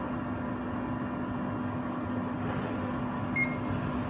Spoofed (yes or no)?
no